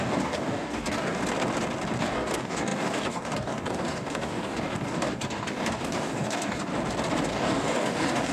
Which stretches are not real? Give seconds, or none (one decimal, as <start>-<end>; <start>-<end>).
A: 0.0-1.2; 2.0-6.7; 7.3-8.3